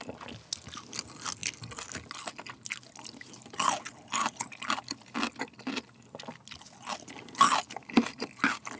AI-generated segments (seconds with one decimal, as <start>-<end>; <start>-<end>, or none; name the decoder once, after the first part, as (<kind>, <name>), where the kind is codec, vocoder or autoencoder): none